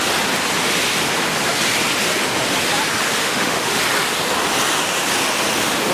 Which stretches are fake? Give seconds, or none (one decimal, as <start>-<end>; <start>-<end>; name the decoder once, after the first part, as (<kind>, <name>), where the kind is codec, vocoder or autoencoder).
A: 3.2-3.8 (autoencoder, DAC-VAE)